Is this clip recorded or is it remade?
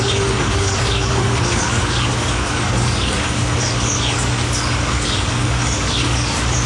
remade